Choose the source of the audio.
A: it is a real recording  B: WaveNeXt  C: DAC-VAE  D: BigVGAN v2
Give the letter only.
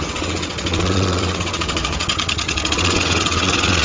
B